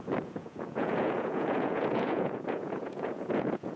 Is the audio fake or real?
fake